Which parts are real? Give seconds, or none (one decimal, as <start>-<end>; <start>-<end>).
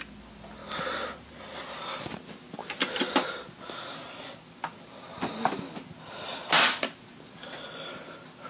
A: 0.0-8.5